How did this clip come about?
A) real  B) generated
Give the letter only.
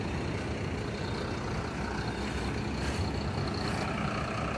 A